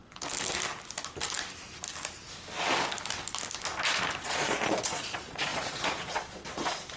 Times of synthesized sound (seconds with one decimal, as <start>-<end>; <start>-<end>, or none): 4.2-7.0

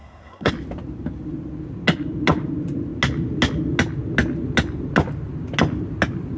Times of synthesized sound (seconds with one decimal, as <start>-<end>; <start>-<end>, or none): 0.0-0.5

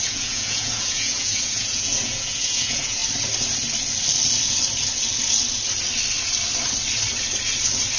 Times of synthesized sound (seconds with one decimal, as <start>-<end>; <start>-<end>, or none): 0.0-3.0

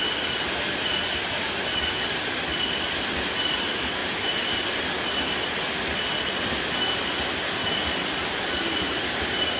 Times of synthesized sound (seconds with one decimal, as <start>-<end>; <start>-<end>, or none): none

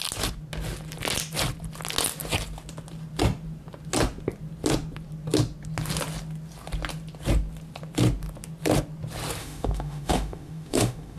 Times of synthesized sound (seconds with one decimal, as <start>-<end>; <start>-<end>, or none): 9.4-11.2